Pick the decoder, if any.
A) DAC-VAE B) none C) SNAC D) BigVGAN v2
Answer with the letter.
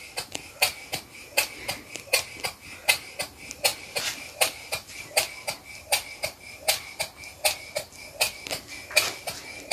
B